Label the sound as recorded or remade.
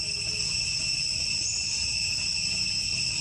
recorded